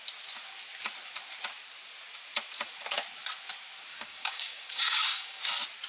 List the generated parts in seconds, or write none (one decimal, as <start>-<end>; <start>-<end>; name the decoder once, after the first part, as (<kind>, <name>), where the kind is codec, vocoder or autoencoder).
3.9-5.4 (codec, DAC)